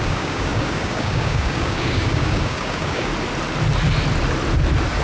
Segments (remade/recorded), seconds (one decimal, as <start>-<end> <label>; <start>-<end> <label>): 0.0-3.1 remade; 3.1-5.0 recorded